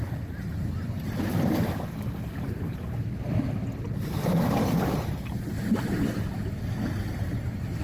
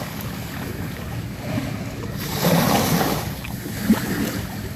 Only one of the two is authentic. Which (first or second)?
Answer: first